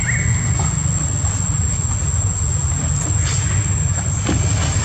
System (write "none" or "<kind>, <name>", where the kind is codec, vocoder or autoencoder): none